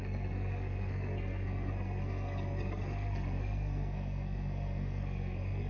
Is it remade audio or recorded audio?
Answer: remade